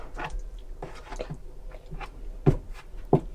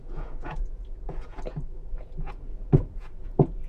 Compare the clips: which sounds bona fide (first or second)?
first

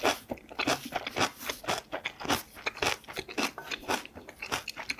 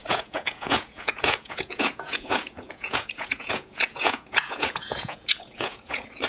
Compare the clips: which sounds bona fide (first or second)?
first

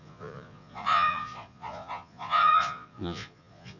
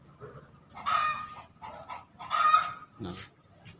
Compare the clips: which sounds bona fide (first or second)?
second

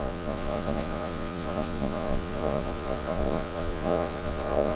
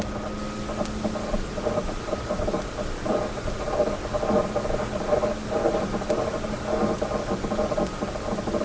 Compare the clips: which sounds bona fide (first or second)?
second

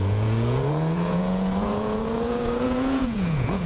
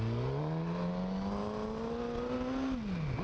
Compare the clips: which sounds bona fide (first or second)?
second